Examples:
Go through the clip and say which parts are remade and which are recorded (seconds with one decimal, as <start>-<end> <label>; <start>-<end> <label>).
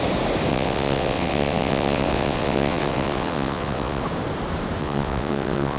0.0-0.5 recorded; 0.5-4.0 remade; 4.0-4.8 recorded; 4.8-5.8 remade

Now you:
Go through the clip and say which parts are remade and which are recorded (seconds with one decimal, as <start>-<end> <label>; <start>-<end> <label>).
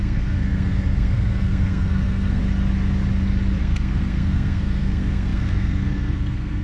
0.0-2.4 remade; 2.4-3.6 recorded; 3.6-6.6 remade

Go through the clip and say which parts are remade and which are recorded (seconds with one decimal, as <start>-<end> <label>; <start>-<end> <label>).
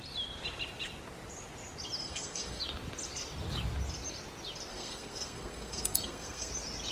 0.0-2.0 recorded; 2.0-2.6 remade; 2.6-4.7 recorded; 4.7-6.5 remade; 6.5-6.9 recorded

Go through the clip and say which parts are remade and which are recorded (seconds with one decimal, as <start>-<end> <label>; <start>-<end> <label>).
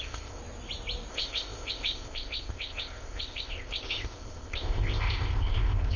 0.0-0.4 remade; 0.4-1.1 recorded; 1.1-6.0 remade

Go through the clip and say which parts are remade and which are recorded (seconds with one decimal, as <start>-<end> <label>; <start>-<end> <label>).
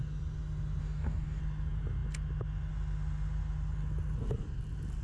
0.0-0.8 recorded; 0.8-1.4 remade; 1.4-5.0 recorded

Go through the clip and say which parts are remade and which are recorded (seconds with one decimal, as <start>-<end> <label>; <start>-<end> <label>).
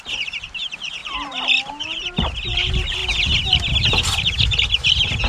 0.0-1.0 remade; 1.0-1.7 recorded; 1.7-3.0 remade; 3.0-5.3 recorded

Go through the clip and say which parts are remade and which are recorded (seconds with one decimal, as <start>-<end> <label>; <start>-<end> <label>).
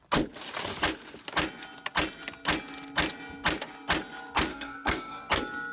0.0-4.5 recorded; 4.5-5.3 remade; 5.3-5.7 recorded